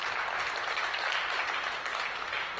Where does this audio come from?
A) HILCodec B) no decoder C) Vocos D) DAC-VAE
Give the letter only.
B